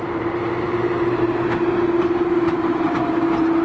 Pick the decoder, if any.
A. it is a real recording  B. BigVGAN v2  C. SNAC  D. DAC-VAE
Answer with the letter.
B